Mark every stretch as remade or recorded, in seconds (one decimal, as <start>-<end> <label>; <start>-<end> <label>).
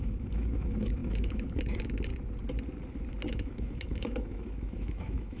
0.0-2.1 remade; 2.1-3.3 recorded; 3.3-5.4 remade